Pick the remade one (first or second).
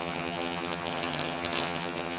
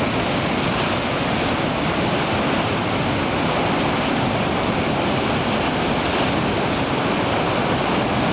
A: first